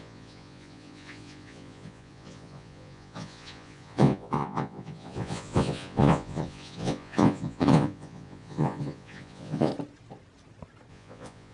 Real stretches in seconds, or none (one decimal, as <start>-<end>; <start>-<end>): 9.7-10.9